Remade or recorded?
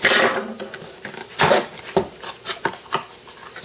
recorded